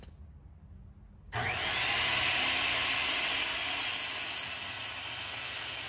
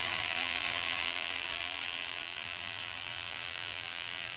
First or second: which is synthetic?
second